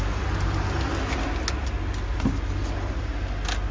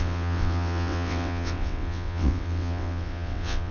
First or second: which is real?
first